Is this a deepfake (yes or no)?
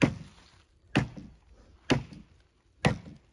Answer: no